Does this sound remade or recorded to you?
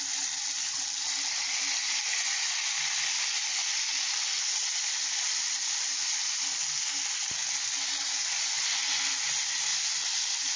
recorded